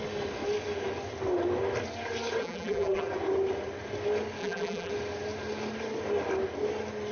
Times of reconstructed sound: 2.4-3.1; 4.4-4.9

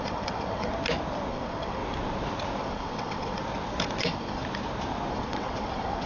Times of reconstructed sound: 0.0-0.7; 1.3-1.8; 2.6-3.4; 4.0-4.4; 5.1-6.1

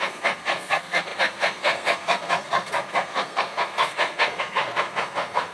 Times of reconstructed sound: 0.0-5.5